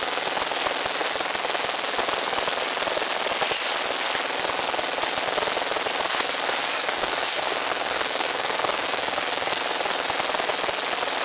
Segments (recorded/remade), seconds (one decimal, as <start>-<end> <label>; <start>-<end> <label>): 0.0-6.6 recorded; 6.6-9.6 remade; 9.6-11.2 recorded